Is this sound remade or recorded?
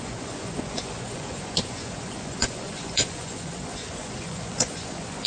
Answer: remade